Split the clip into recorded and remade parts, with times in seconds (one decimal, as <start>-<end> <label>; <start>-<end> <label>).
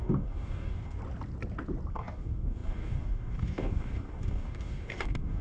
0.0-1.0 remade; 1.0-1.9 recorded; 1.9-5.4 remade